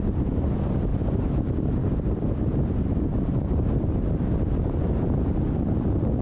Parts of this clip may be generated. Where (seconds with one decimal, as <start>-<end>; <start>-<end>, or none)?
0.9-1.4